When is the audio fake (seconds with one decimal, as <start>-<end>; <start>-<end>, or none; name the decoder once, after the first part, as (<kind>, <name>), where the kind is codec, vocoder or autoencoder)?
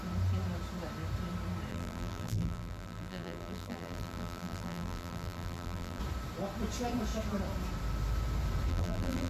1.7-6.0 (vocoder, BigVGAN v2); 8.7-9.3